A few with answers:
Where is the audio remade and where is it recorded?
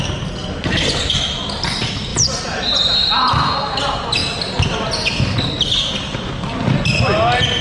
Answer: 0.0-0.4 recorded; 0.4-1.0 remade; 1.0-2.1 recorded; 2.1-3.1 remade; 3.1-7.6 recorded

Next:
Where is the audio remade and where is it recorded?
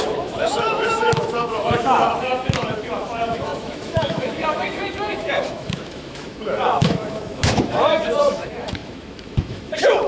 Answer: 0.0-10.1 remade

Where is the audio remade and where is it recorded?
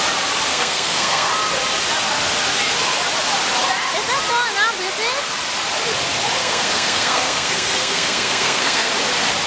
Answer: 0.0-0.5 recorded; 0.5-1.3 remade; 1.3-6.4 recorded; 6.4-8.9 remade; 8.9-9.5 recorded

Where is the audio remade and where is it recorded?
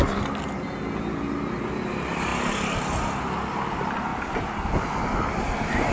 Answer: 0.0-4.1 recorded; 4.1-5.0 remade; 5.0-5.9 recorded